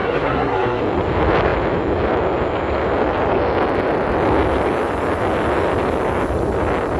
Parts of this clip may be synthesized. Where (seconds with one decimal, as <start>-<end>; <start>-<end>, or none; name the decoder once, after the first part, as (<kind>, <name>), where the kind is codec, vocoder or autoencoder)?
0.0-0.8 (codec, SNAC)